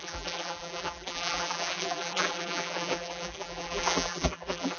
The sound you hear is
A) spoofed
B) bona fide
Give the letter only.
A